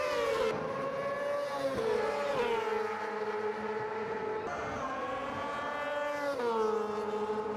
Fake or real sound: real